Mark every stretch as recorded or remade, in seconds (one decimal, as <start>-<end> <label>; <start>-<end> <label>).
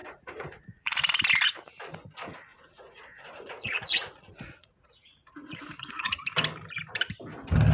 0.0-1.0 remade; 1.0-2.5 recorded; 2.5-6.2 remade; 6.2-7.7 recorded